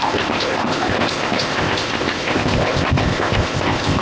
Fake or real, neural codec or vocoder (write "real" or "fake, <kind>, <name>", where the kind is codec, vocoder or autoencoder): fake, codec, ZipCodec